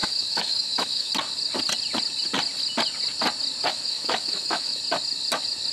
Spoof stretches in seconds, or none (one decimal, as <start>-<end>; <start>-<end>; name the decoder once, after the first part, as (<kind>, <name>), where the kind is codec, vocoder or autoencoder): 0.0-1.1 (autoencoder, DAC-VAE); 3.7-4.8